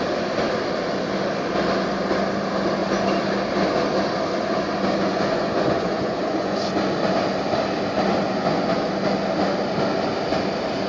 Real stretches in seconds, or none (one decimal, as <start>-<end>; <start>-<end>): 0.0-5.1; 6.8-8.4; 8.9-10.9